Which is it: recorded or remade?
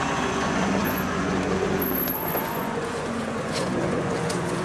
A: remade